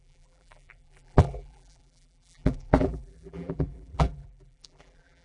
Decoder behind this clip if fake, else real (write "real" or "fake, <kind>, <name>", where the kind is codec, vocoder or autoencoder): fake, vocoder, BigVGAN v2